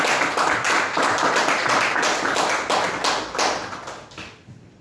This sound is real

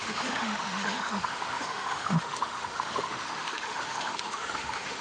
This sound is fake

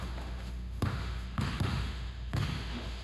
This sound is fake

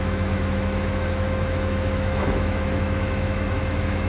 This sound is fake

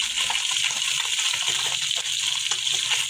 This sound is real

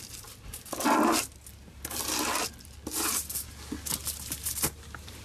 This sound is real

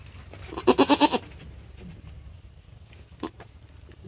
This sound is real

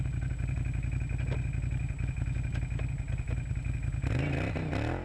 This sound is real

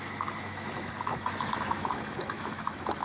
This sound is fake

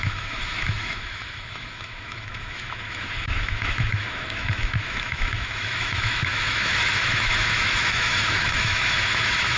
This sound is fake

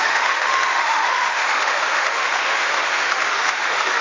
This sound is fake